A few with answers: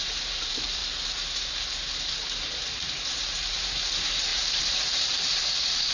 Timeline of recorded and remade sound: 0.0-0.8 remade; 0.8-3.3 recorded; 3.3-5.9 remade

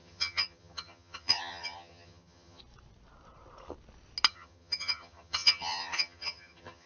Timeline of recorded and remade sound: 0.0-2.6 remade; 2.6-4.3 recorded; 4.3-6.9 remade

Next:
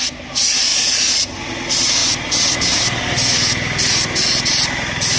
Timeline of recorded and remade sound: 0.0-5.2 recorded